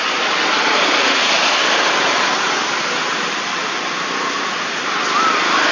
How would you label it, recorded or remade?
recorded